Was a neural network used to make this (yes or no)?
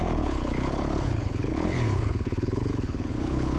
yes